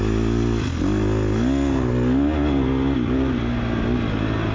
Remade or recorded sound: recorded